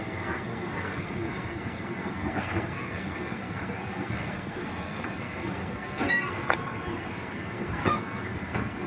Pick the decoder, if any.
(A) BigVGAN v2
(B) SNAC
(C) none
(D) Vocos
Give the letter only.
B